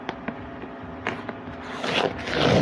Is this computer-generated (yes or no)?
no